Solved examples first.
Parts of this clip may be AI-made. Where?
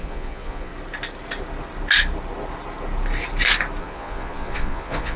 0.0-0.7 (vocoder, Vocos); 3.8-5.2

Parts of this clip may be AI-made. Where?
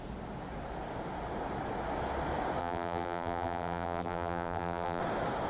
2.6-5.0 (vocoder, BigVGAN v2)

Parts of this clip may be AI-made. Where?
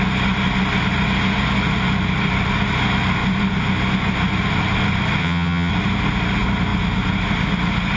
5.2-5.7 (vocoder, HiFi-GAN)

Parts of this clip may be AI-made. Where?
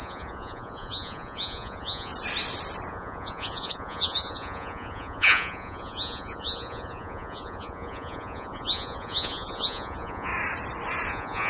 0.0-2.1 (vocoder, Vocos); 2.9-10.3; 11.1-11.5